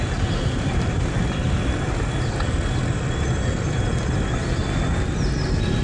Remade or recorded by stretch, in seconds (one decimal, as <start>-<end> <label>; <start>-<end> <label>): 0.0-5.8 recorded